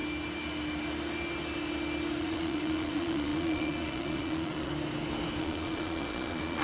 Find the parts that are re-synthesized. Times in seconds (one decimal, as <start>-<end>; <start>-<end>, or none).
2.2-4.7; 5.4-6.6